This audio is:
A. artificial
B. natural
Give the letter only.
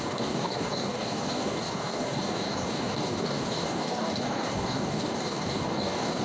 A